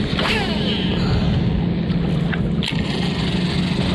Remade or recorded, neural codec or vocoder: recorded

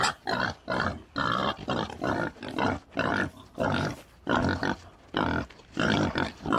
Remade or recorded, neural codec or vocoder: recorded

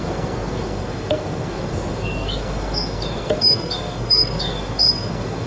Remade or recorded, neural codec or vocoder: remade, codec, SNAC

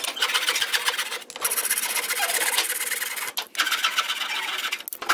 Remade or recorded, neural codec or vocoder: recorded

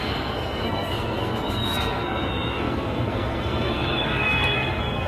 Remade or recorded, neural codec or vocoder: remade, codec, SNAC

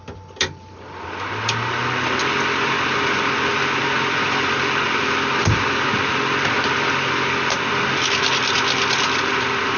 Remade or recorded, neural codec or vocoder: recorded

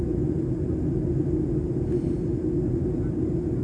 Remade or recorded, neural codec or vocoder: recorded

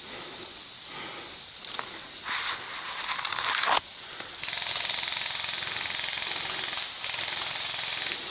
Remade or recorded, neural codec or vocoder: recorded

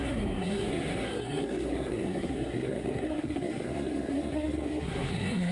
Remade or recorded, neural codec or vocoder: remade, codec, SNAC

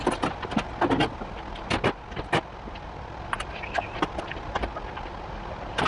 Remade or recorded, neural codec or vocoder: recorded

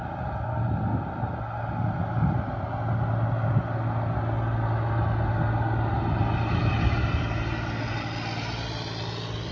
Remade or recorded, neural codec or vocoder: recorded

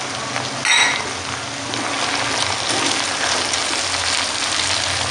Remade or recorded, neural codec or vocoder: recorded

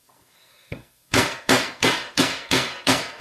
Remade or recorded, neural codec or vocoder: remade, codec, SNAC